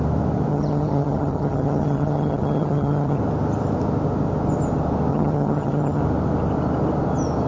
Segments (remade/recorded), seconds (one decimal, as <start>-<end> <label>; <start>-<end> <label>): 0.0-0.5 recorded; 0.5-3.2 remade; 3.2-5.1 recorded; 5.1-6.0 remade; 6.0-7.5 recorded